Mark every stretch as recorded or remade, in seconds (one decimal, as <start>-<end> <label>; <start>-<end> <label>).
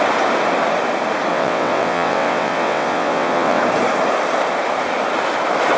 0.0-1.3 recorded; 1.3-3.6 remade; 3.6-5.8 recorded